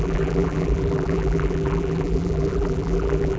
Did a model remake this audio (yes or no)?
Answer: yes